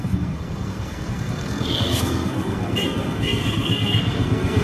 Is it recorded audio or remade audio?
remade